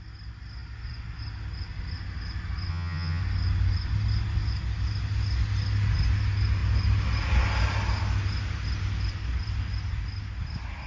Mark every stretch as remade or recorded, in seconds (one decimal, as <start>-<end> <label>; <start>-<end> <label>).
0.0-2.7 recorded; 2.7-3.2 remade; 3.2-10.9 recorded